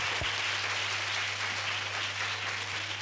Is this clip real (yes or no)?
yes